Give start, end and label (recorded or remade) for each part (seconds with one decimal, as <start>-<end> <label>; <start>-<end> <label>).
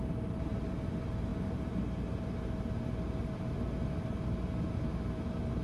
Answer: 0.0-5.6 recorded